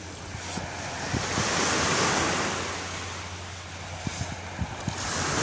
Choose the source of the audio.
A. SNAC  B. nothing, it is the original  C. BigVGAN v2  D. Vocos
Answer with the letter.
B